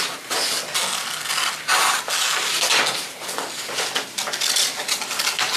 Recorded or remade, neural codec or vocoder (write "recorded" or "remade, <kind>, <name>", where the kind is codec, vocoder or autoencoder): recorded